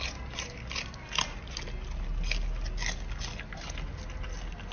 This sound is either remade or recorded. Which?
recorded